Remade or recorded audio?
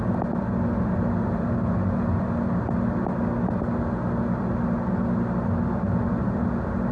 recorded